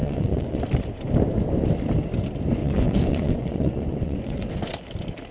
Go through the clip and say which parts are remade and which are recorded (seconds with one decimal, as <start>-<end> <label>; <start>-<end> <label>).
0.0-0.6 remade; 0.6-2.6 recorded; 2.6-4.5 remade; 4.5-5.3 recorded